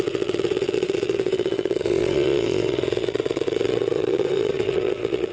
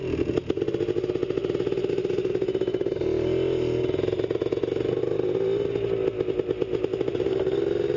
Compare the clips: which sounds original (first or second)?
second